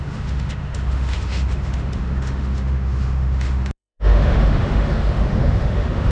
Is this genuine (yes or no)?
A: no